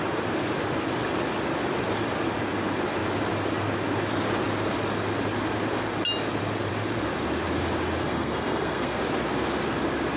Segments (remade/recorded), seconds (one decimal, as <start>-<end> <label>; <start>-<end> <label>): 0.0-8.0 recorded; 8.0-9.0 remade; 9.0-10.2 recorded